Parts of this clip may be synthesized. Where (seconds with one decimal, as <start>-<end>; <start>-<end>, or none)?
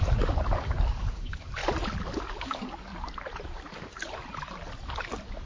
0.0-1.6; 2.4-2.9